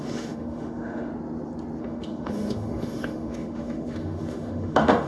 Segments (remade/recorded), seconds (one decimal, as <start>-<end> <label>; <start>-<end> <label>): 0.0-1.1 remade; 1.1-1.8 recorded; 1.8-5.1 remade

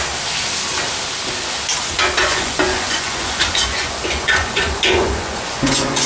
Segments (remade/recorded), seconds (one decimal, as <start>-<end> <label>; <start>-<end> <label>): 0.0-2.2 recorded; 2.2-6.1 remade

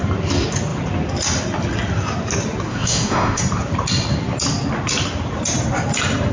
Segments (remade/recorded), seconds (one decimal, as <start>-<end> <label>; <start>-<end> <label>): 0.0-2.7 recorded; 2.7-3.4 remade; 3.4-6.3 recorded

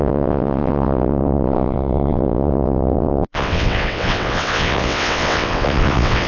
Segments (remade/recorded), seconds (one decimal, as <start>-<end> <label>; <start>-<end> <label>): 0.0-6.3 remade

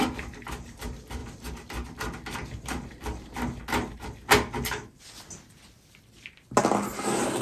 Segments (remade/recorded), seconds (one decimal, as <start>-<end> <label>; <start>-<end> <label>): 0.0-7.4 recorded

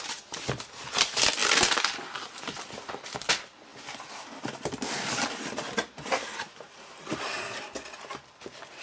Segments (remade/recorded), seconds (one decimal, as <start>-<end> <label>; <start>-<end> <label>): 0.0-1.4 recorded; 1.4-3.3 remade; 3.3-3.7 recorded; 3.7-7.2 remade; 7.2-8.8 recorded